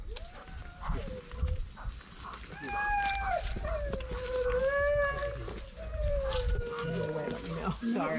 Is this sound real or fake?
real